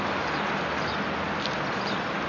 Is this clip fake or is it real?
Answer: real